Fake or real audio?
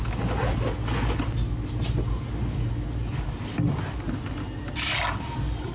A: real